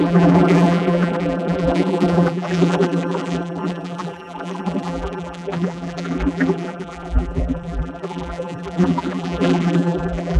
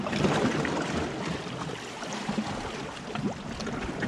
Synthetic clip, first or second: first